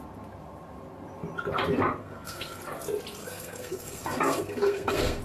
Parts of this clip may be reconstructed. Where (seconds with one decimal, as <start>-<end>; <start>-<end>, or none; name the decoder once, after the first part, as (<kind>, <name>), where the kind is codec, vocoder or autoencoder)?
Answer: 2.0-2.6 (codec, SNAC); 3.2-5.2